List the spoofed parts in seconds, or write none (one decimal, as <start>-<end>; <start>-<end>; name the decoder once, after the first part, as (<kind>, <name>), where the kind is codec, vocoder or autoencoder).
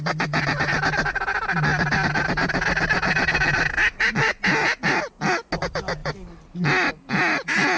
none